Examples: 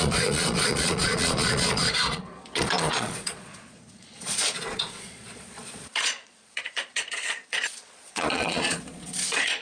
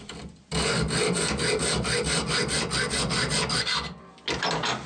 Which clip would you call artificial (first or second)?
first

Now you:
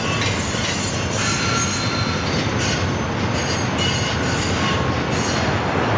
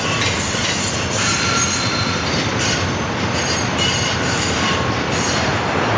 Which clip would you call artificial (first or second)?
second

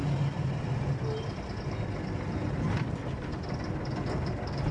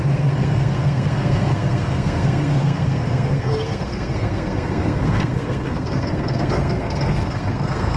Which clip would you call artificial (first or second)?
second